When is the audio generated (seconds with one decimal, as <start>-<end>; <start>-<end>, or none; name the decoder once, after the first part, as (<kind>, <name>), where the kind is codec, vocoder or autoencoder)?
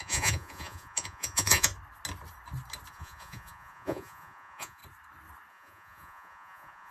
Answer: 0.0-1.7 (vocoder, Vocos); 2.9-4.8; 5.5-6.9